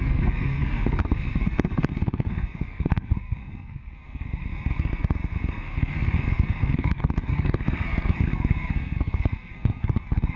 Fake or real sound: fake